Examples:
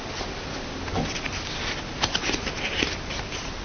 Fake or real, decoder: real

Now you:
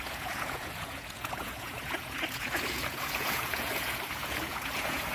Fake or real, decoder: fake, vocoder, Vocos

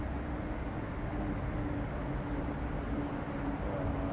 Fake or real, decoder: real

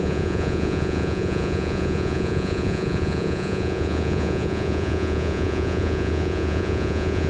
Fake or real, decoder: fake, vocoder, Vocos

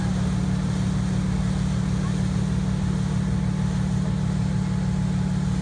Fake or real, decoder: real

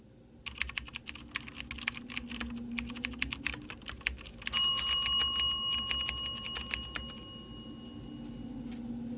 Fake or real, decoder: real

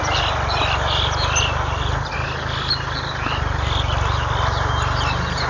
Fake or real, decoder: real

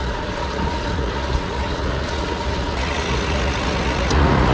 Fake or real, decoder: fake, vocoder, Vocos